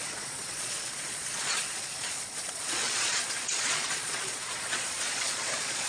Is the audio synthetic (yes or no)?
yes